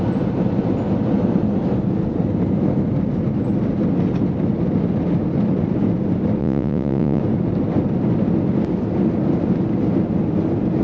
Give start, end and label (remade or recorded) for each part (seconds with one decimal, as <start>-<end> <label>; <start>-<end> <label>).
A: 0.0-6.4 recorded; 6.4-7.2 remade; 7.2-10.8 recorded